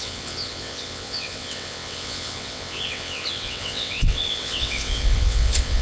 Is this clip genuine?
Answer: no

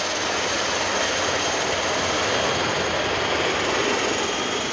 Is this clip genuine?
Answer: yes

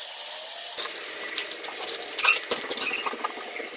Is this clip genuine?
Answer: yes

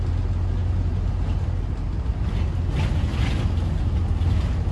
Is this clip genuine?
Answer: yes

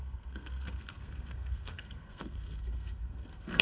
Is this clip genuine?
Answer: no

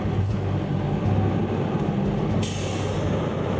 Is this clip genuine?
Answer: yes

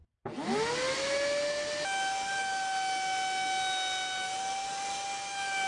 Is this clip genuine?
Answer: yes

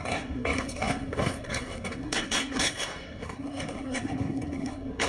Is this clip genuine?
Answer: no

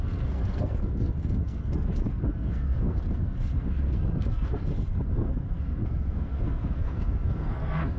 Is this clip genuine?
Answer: no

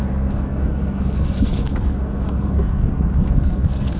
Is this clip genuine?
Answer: no